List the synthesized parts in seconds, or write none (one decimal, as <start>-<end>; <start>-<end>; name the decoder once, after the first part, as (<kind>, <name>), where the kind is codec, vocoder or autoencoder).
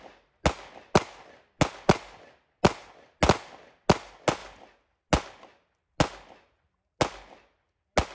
none